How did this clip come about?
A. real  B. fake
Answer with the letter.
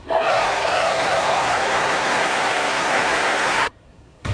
B